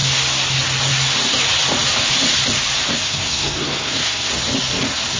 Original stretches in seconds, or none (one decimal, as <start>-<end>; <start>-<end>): 0.0-2.9; 4.3-5.2